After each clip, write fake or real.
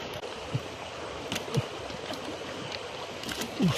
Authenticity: real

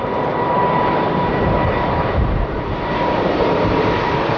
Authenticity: fake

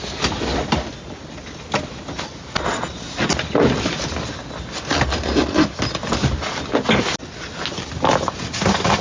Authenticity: real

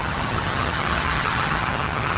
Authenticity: fake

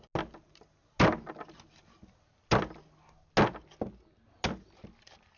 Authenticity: real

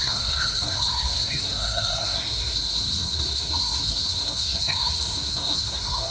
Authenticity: fake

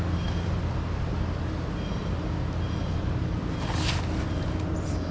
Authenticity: real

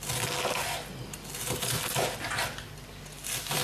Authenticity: real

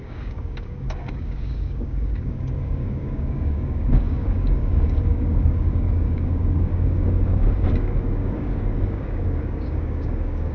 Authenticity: fake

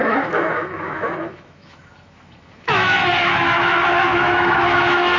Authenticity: fake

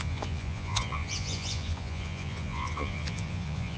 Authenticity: fake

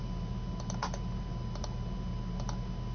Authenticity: real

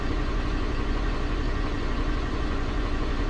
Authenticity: fake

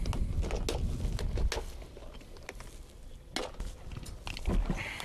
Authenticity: real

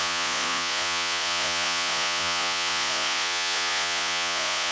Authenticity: fake